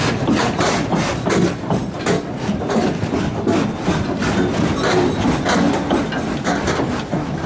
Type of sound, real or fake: real